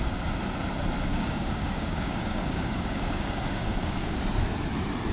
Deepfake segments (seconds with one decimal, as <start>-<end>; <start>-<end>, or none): 1.1-4.2